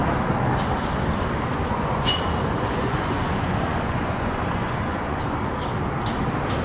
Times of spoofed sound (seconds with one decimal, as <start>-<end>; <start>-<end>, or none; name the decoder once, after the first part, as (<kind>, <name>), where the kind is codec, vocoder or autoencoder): 1.5-5.5 (vocoder, Vocos)

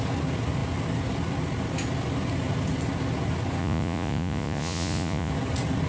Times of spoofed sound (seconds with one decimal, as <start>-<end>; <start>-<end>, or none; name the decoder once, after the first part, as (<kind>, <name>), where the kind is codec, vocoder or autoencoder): 3.6-5.3 (vocoder, Vocos)

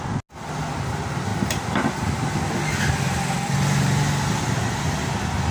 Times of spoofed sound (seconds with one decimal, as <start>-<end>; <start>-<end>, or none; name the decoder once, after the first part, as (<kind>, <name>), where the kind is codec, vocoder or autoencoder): none

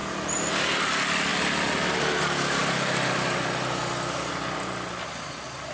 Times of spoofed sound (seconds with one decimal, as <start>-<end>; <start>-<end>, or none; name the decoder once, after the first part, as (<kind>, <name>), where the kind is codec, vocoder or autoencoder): none

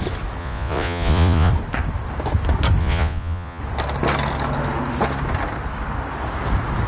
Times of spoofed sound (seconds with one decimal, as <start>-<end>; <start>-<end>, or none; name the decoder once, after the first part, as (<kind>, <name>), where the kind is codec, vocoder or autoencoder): 0.4-1.5 (vocoder, Vocos); 2.8-3.6

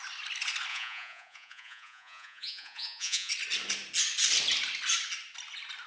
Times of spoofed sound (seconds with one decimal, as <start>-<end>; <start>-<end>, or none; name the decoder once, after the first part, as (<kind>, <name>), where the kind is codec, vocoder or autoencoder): 0.7-3.3 (vocoder, Vocos)